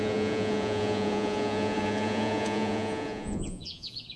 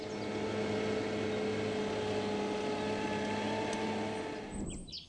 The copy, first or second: first